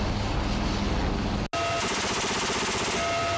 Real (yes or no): yes